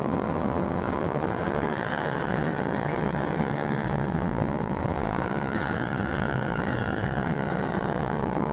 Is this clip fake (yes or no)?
yes